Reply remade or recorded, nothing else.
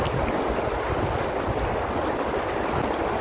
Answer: recorded